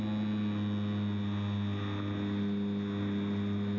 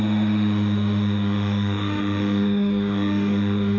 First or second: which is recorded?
first